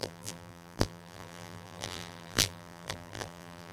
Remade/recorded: remade